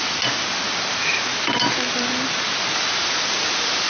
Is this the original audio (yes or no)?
yes